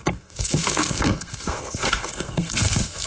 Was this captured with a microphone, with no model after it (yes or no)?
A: no